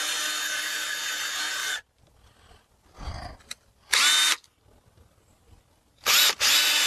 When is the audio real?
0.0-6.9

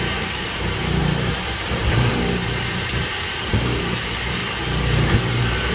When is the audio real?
4.4-5.2

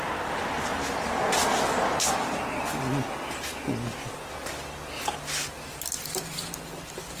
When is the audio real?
0.0-7.2

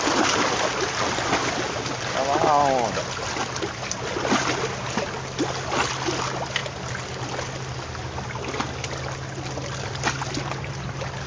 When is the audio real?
0.0-11.3

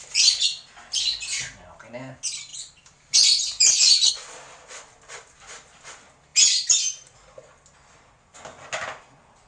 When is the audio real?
0.0-2.5; 4.1-9.5

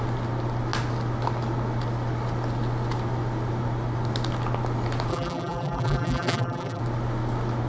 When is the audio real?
0.0-5.1; 6.8-7.7

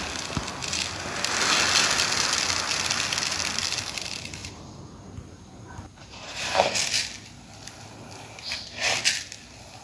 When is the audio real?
0.0-4.4; 6.7-9.8

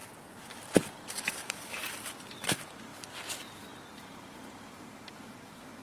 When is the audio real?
0.0-1.4; 1.8-2.4; 2.9-3.9